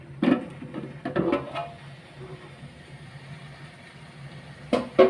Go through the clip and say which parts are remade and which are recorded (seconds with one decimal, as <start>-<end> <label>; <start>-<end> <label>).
0.0-5.1 recorded